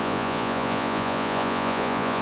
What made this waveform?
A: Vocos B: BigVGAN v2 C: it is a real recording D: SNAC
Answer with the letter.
A